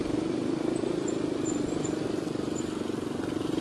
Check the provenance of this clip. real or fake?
real